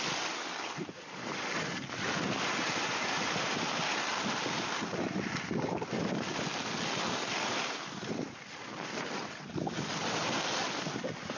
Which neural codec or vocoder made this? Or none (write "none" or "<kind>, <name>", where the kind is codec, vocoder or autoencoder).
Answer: none